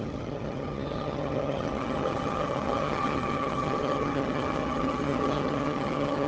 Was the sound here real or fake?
fake